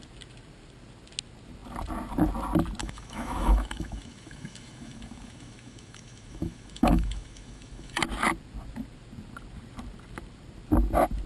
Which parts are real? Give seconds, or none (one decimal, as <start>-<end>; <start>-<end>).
0.0-2.8; 8.0-11.3